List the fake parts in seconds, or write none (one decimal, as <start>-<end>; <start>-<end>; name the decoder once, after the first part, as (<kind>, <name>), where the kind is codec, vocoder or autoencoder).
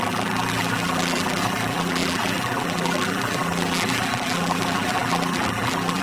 0.0-6.0 (vocoder, BigVGAN v2)